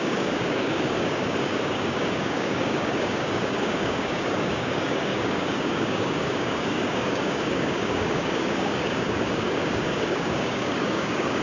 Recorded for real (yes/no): no